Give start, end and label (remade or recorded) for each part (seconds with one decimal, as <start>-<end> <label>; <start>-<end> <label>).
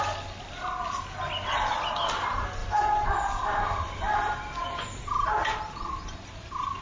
0.0-6.8 recorded